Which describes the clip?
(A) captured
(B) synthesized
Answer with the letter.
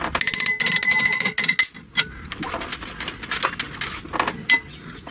A